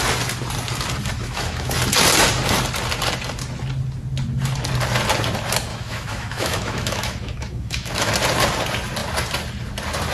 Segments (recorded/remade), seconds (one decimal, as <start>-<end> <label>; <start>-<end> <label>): 0.0-1.2 recorded; 1.2-1.7 remade; 1.7-5.7 recorded; 5.7-8.1 remade; 8.1-10.1 recorded